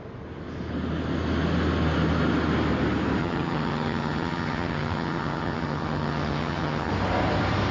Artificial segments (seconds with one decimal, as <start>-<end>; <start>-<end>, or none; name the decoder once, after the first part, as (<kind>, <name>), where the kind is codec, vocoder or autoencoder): 3.2-6.9 (vocoder, HiFi-GAN)